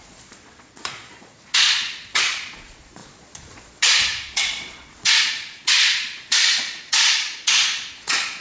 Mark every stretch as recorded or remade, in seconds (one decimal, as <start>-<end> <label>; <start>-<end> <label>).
0.0-8.4 remade